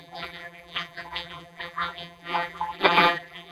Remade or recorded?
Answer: remade